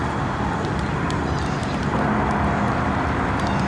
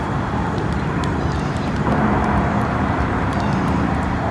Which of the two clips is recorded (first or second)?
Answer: first